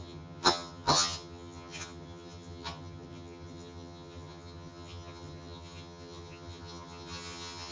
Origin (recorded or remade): remade